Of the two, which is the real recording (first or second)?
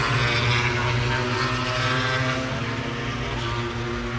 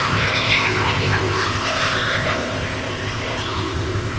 first